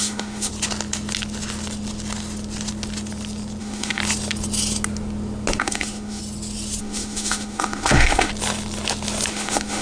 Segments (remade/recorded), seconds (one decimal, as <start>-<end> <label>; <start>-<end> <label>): 0.0-0.5 remade; 0.5-3.6 recorded; 3.6-4.0 remade; 4.0-5.6 recorded; 5.6-6.2 remade; 6.2-6.8 recorded; 6.8-8.3 remade; 8.3-9.3 recorded; 9.3-9.8 remade